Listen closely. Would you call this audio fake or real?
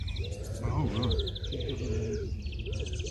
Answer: real